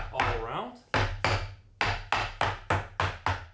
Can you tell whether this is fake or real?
real